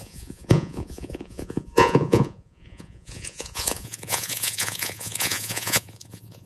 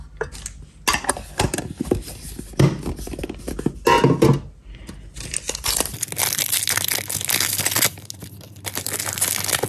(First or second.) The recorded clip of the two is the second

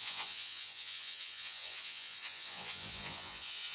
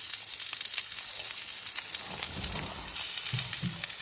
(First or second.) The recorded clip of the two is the second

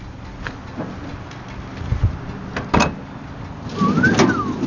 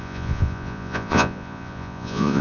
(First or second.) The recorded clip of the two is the first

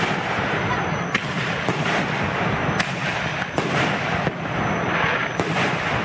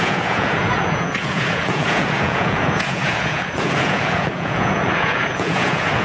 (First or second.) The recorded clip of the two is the first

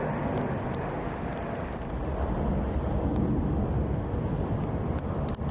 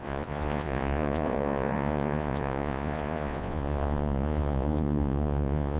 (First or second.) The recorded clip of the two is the first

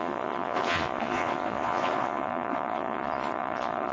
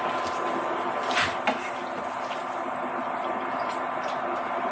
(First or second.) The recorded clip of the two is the second